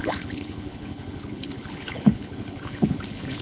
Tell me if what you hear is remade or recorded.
remade